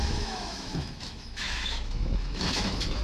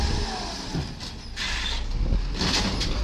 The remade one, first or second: first